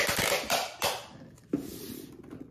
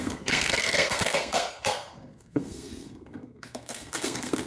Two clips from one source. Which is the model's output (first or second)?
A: second